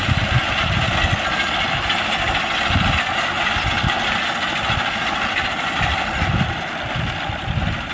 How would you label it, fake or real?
real